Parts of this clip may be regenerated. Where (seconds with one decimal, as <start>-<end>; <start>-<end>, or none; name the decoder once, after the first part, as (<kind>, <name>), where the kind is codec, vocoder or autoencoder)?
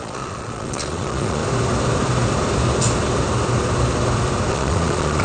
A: 0.0-1.4 (vocoder, Vocos); 4.5-5.2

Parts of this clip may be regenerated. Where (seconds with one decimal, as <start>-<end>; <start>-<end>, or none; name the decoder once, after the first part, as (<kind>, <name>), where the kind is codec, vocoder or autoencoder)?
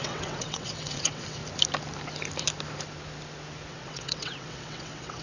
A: 0.0-1.4 (vocoder, WaveNeXt); 3.7-5.2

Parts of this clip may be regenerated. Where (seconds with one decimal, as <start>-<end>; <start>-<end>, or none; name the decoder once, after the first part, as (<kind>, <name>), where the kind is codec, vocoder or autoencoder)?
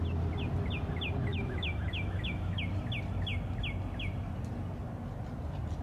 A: 1.3-2.6 (autoencoder, DAC-VAE)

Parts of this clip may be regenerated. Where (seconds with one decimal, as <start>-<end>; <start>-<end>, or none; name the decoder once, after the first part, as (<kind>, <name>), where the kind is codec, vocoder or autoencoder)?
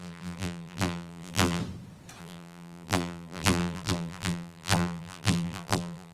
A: 0.0-1.6 (vocoder, BigVGAN v2); 2.2-6.1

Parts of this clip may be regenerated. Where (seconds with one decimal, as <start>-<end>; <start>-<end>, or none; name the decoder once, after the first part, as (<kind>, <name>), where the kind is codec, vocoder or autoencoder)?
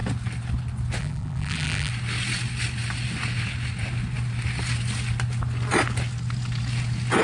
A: 1.0-1.9 (vocoder, BigVGAN v2)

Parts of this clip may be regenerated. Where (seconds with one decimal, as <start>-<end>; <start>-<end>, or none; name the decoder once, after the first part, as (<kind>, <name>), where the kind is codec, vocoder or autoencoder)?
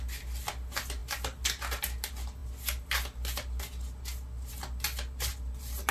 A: none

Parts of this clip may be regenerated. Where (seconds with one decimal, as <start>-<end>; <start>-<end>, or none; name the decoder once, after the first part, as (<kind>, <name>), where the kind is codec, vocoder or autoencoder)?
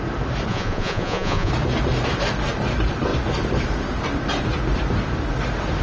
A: 0.5-1.5 (vocoder, Vocos)